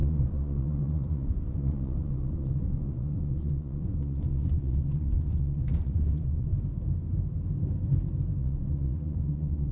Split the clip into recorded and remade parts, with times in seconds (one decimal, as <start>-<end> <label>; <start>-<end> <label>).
0.0-6.5 remade; 6.5-8.4 recorded; 8.4-9.7 remade